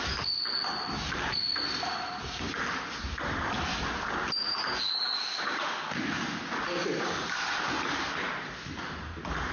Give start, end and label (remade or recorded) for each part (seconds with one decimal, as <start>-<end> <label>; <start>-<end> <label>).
0.0-9.5 recorded